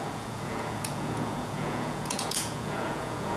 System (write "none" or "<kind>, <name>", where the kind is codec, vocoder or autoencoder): vocoder, Vocos